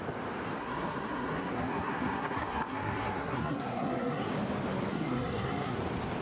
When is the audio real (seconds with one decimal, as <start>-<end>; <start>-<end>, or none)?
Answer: 0.0-0.6; 4.3-4.9; 5.8-6.2